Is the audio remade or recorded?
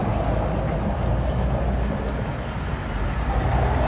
recorded